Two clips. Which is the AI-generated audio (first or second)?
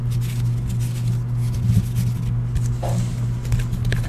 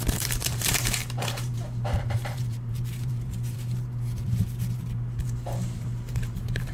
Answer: second